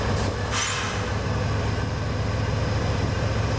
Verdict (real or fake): real